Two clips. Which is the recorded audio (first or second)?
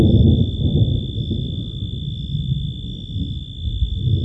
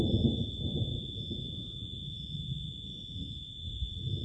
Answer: first